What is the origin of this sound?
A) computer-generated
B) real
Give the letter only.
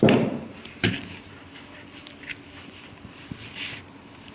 A